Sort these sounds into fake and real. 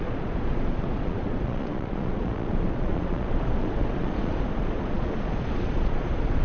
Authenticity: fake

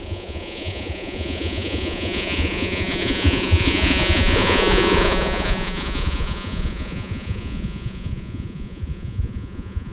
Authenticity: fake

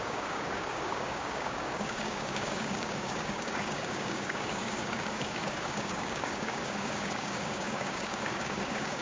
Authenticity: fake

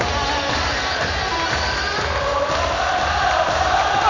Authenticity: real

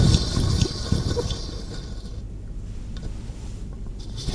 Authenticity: fake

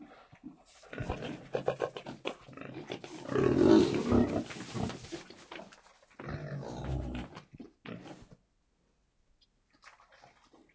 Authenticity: real